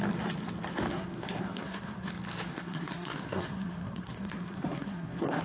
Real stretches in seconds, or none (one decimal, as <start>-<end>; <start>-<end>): 0.0-0.9; 2.1-2.5